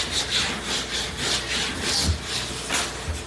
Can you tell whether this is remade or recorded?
recorded